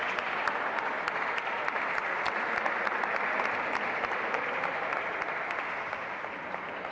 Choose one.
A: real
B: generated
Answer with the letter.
A